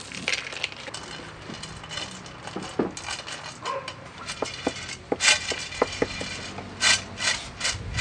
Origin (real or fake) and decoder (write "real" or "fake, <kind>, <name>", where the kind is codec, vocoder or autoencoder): real